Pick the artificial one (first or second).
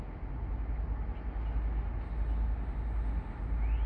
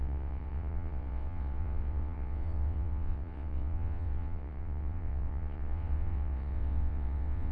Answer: second